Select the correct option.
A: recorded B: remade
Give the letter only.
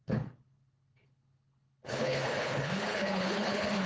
B